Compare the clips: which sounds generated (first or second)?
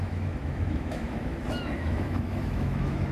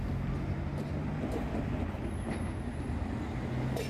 first